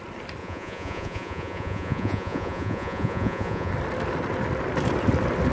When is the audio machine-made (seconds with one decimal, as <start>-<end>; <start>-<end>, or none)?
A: 0.4-3.7